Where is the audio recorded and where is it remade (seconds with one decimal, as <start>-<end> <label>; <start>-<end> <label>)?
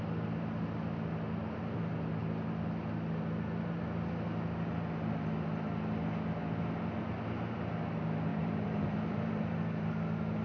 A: 0.0-8.3 recorded; 8.3-9.9 remade; 9.9-10.4 recorded